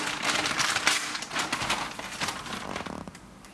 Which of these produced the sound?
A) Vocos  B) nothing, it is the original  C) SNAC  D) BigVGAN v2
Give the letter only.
B